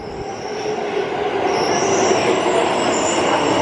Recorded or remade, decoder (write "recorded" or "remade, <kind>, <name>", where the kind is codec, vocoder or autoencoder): recorded